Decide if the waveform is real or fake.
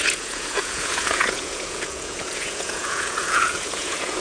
fake